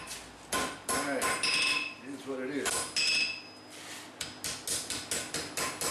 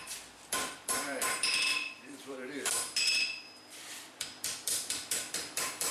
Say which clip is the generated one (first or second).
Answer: second